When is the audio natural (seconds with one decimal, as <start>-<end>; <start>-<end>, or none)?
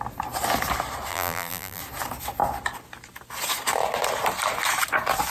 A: 0.0-1.1; 1.8-5.3